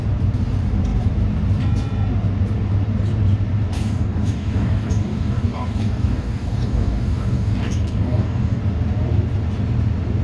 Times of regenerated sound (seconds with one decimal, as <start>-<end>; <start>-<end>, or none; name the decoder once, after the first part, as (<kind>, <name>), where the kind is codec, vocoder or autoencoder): 3.7-8.6 (codec, DAC)